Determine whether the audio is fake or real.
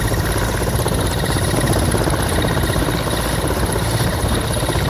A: real